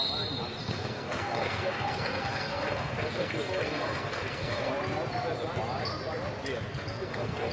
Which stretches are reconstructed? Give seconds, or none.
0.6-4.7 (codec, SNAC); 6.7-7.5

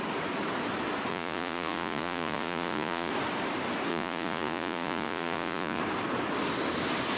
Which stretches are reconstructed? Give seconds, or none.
1.1-3.1 (vocoder, Vocos); 3.9-5.8

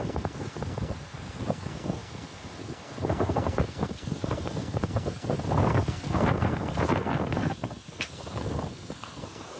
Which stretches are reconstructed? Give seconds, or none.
0.0-9.6 (codec, SNAC)

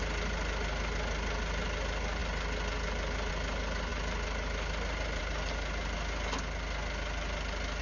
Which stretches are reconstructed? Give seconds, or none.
none

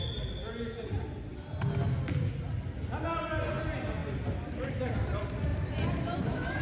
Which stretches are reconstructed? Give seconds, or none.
none

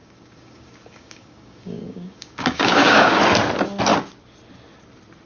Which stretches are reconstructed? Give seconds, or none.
0.0-3.2 (codec, DAC)

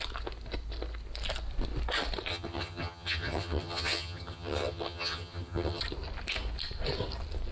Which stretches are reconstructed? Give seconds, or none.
2.3-5.8 (vocoder, HiFi-GAN)

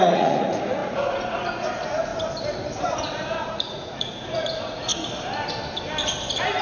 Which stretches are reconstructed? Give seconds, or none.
0.0-2.1 (vocoder, Vocos); 2.8-4.9